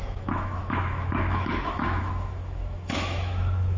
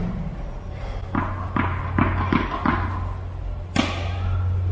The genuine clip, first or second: second